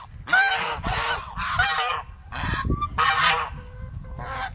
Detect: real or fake real